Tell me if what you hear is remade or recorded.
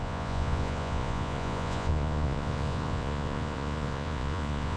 remade